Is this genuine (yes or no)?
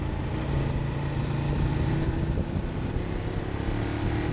yes